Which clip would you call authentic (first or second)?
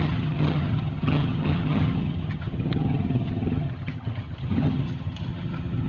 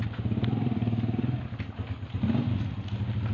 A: second